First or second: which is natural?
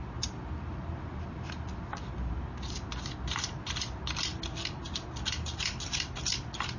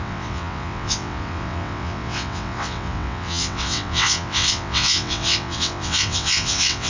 first